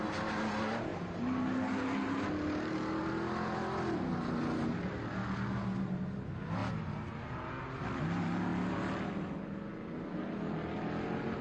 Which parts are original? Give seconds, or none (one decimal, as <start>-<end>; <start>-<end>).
0.0-0.9; 3.0-8.5; 10.0-11.4